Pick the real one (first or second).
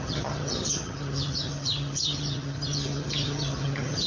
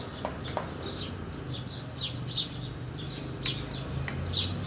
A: second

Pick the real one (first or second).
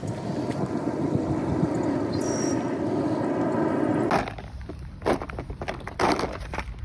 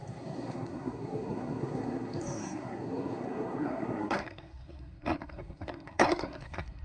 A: first